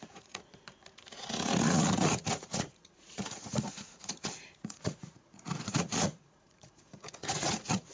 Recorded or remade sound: remade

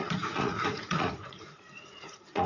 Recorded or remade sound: remade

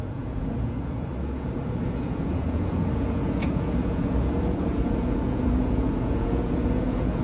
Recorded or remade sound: remade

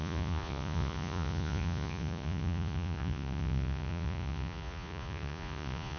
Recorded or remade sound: remade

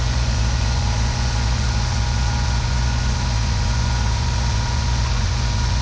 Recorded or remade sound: remade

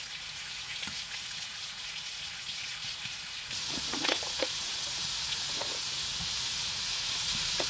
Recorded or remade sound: remade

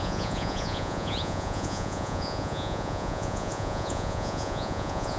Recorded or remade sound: remade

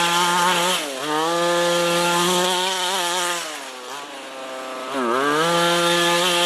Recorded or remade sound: recorded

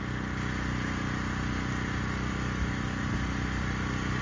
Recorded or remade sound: recorded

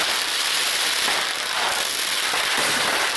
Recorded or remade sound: recorded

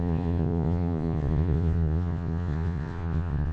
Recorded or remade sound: remade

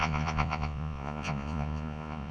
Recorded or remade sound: remade